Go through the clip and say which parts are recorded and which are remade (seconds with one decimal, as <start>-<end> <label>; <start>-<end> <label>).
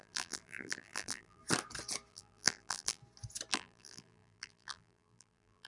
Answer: 0.0-1.4 remade; 1.4-2.1 recorded; 2.1-3.0 remade; 3.0-3.5 recorded; 3.5-5.7 remade